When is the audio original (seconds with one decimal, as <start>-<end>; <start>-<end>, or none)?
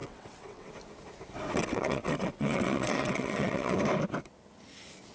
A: 0.7-1.6; 3.8-5.1